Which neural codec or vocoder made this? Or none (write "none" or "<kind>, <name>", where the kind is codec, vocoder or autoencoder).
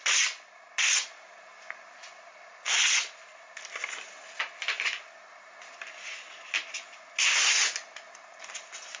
none